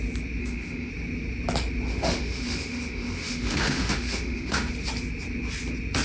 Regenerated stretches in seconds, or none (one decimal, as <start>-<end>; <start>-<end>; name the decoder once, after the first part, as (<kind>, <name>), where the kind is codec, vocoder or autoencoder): 0.4-0.9 (autoencoder, DAC-VAE); 1.9-4.7